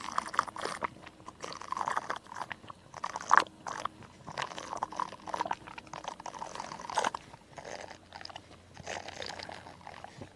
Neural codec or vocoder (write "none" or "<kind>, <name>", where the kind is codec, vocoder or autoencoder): none